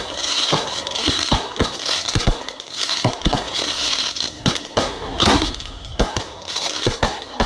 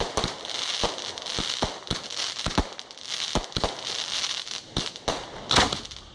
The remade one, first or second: first